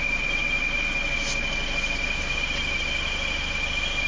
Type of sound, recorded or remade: recorded